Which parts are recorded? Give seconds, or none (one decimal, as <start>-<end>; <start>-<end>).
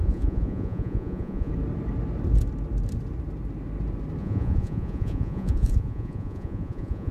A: 1.5-4.2